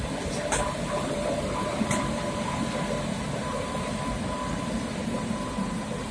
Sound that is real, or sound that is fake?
fake